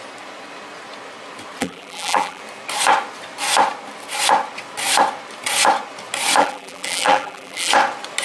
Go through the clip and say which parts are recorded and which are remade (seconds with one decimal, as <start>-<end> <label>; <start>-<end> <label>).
0.0-1.6 recorded; 1.6-2.4 remade; 2.4-6.4 recorded; 6.4-7.7 remade; 7.7-8.2 recorded